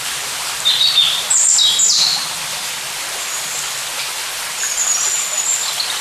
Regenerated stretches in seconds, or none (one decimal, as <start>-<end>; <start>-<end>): 1.0-1.6